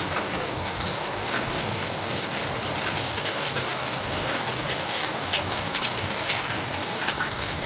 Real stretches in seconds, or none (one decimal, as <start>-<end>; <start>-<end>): 2.4-2.9